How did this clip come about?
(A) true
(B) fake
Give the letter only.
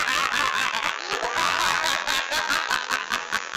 B